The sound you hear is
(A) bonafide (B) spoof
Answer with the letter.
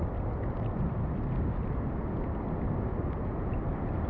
A